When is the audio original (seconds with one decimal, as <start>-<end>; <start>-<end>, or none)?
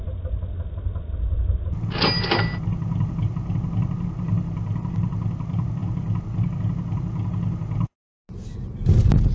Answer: 0.0-9.3